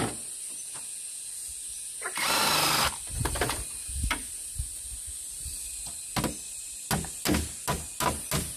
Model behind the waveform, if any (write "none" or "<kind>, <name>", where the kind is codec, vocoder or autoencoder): none